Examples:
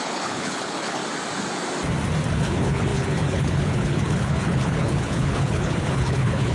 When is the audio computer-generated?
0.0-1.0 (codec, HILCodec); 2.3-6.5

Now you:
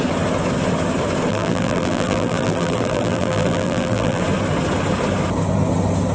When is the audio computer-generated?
1.3-4.2 (vocoder, BigVGAN v2)

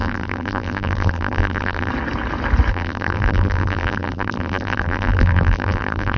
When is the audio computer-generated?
0.0-1.9 (vocoder, BigVGAN v2); 2.7-6.2

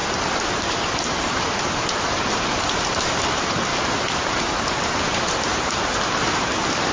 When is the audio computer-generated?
0.6-6.9 (vocoder, BigVGAN v2)

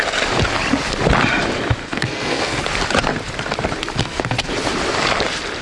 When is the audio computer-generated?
1.8-2.6 (codec, SNAC); 4.0-4.5